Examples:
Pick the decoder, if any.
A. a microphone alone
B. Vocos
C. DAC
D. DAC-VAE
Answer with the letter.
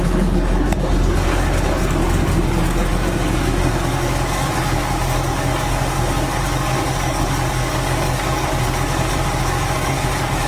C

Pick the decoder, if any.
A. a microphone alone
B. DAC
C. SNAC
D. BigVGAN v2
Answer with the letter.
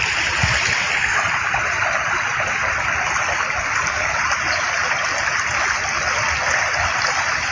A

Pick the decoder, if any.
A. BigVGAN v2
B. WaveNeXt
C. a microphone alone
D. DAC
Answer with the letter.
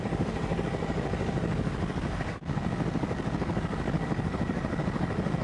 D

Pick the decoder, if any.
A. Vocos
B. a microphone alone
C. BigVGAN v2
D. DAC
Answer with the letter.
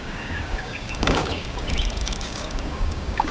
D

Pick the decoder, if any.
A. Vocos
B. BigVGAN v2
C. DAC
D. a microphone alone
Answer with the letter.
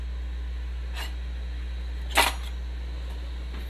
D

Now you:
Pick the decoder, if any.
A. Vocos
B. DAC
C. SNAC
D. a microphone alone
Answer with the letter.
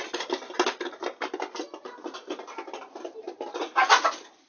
D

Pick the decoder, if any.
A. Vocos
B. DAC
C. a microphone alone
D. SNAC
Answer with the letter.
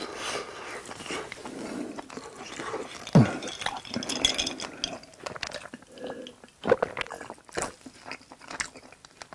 C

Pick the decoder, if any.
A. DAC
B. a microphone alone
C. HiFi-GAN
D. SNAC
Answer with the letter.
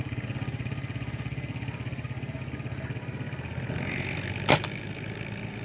B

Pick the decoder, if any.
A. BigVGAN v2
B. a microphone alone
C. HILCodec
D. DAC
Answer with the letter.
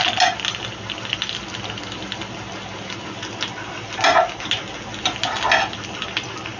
B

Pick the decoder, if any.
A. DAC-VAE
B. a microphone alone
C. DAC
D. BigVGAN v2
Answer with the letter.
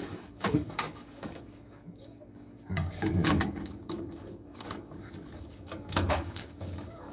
C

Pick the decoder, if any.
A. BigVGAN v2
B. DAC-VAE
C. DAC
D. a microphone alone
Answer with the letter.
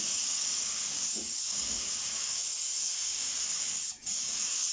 C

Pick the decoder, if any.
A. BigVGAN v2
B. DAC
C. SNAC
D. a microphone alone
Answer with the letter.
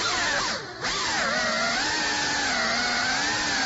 D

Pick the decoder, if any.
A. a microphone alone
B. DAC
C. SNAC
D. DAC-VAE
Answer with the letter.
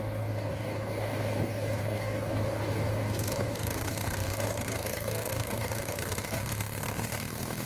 B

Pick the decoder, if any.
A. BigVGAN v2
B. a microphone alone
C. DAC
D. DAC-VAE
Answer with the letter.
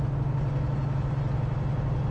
B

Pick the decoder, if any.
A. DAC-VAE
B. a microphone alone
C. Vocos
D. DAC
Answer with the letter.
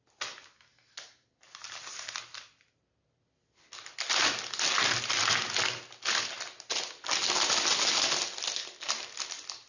B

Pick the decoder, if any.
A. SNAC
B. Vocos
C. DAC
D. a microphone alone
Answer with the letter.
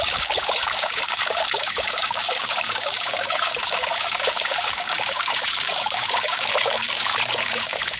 C